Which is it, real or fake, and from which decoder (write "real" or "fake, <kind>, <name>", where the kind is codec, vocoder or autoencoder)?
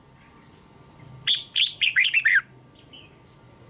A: real